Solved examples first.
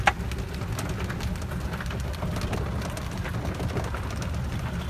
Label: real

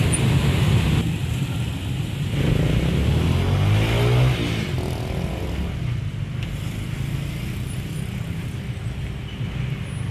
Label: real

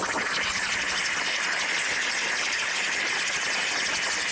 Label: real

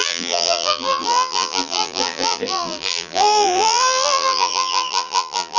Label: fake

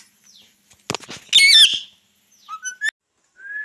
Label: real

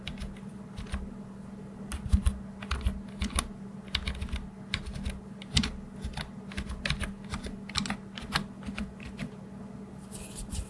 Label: real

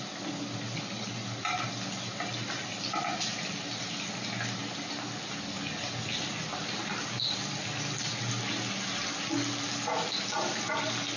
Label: real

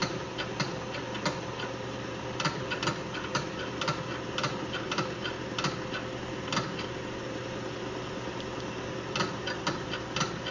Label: real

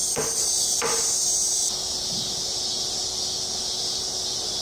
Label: real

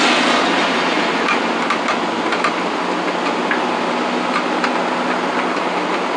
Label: real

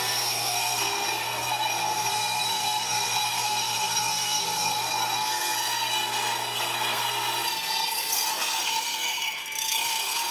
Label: fake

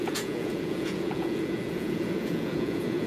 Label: fake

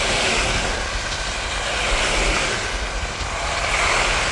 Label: real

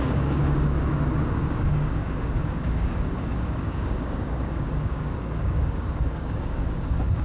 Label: fake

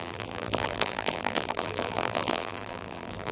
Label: fake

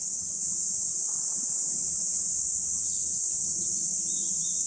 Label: real